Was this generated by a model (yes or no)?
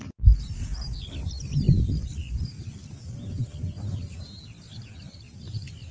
no